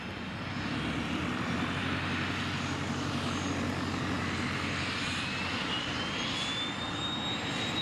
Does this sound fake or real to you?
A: real